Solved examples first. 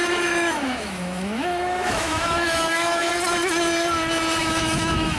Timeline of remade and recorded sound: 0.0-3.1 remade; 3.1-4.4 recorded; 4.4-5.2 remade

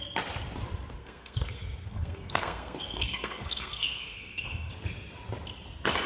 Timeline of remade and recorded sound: 0.0-1.0 recorded; 1.0-4.7 remade; 4.7-6.1 recorded

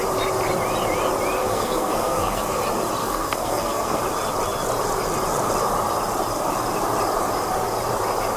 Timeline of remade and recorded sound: 0.0-1.4 recorded; 1.4-2.6 remade; 2.6-3.0 recorded; 3.0-4.0 remade; 4.0-8.4 recorded

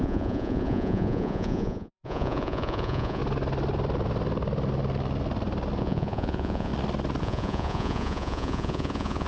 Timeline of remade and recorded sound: 0.0-3.2 remade; 3.2-5.8 recorded; 5.8-6.7 remade; 6.7-7.2 recorded; 7.2-9.3 remade

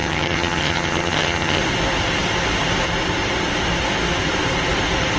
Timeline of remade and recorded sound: 0.0-1.6 remade; 1.6-5.2 recorded

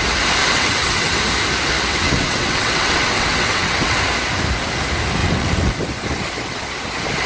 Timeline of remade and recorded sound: 0.0-0.4 recorded; 0.4-1.2 remade; 1.2-1.9 recorded; 1.9-4.0 remade; 4.0-5.2 recorded; 5.2-5.8 remade; 5.8-7.3 recorded